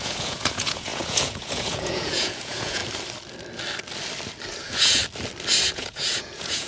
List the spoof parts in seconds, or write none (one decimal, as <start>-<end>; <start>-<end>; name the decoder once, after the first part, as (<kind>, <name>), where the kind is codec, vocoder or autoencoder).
0.0-2.8 (vocoder, Vocos); 4.6-5.0; 5.6-6.7